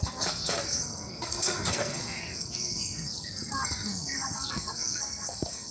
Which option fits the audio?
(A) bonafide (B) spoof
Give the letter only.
B